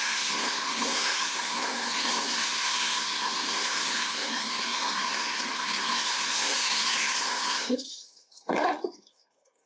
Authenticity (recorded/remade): remade